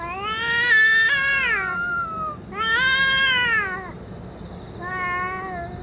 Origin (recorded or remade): recorded